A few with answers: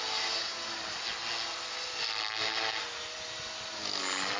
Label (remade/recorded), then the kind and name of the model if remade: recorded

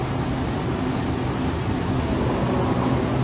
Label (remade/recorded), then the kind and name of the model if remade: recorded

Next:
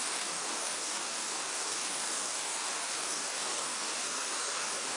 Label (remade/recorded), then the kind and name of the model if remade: remade, codec, DAC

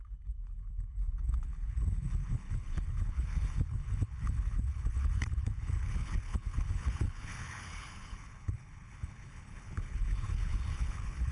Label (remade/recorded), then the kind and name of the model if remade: remade, codec, HILCodec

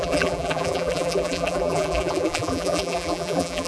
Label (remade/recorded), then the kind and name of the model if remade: remade, vocoder, BigVGAN v2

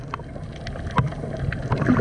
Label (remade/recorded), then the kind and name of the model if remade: recorded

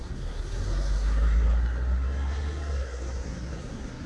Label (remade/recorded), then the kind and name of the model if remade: remade, codec, SNAC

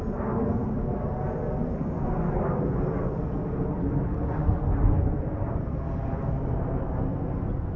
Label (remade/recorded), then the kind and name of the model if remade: recorded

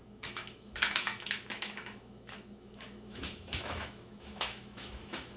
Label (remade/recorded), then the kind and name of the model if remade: remade, autoencoder, DAC-VAE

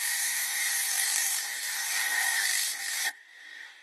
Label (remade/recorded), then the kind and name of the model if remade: remade, codec, DAC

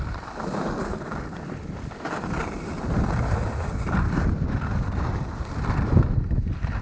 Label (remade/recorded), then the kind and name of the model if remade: recorded